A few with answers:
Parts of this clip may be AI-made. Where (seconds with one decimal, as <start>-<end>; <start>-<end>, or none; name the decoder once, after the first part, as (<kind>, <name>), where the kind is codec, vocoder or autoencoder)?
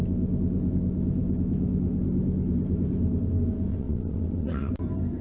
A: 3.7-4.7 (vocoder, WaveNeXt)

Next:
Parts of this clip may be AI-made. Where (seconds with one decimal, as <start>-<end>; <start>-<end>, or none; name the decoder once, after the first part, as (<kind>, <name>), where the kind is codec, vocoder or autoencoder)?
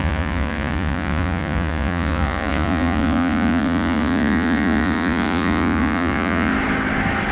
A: 0.0-6.5 (vocoder, Vocos)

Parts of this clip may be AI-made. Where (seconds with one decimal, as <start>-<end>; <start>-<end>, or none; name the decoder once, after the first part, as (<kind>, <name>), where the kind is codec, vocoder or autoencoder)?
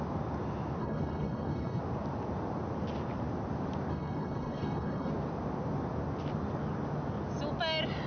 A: 0.8-1.8 (codec, HILCodec); 3.9-5.1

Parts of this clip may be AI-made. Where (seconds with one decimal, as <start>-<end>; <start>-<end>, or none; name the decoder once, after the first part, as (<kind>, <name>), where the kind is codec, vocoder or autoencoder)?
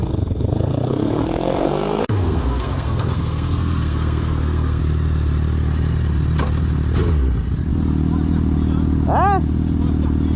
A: 0.0-4.8 (codec, SNAC)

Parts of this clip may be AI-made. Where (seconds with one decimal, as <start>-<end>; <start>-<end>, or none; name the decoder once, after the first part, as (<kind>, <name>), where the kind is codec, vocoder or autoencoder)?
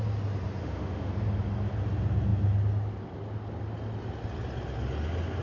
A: 0.6-1.1 (autoencoder, DAC-VAE)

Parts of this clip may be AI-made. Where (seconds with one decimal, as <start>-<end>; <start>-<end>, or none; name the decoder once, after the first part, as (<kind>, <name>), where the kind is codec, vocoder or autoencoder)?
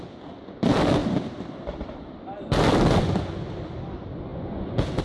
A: 4.3-5.0 (vocoder, Vocos)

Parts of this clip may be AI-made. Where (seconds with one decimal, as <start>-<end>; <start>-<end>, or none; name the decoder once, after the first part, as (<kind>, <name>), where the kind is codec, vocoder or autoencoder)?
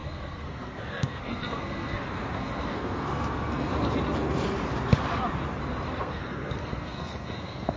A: 0.0-3.7 (codec, SNAC); 6.0-7.8